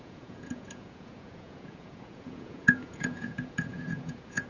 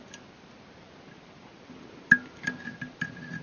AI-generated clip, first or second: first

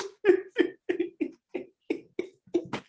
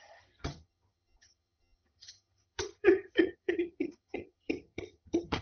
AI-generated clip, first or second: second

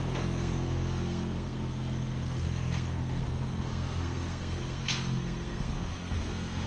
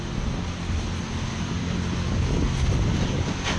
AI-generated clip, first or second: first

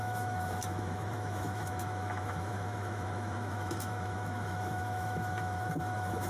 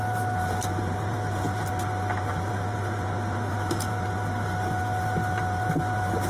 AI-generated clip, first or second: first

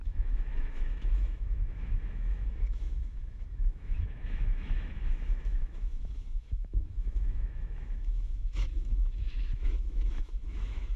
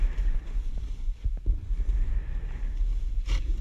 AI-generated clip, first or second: first